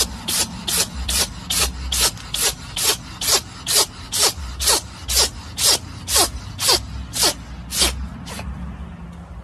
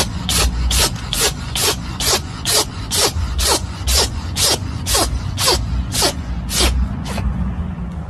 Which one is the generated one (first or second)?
second